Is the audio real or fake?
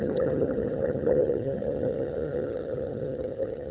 fake